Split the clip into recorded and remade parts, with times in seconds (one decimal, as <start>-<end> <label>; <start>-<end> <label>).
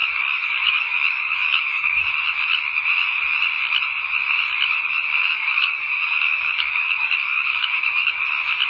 0.0-2.1 remade; 2.1-5.2 recorded; 5.2-8.2 remade; 8.2-8.7 recorded